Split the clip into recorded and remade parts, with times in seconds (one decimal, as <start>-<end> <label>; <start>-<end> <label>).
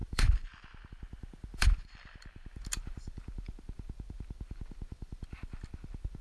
0.0-6.2 remade